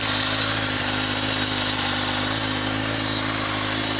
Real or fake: real